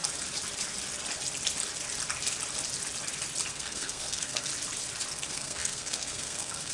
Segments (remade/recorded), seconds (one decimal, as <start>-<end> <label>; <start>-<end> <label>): 0.0-3.5 recorded; 3.5-4.5 remade; 4.5-5.1 recorded; 5.1-6.7 remade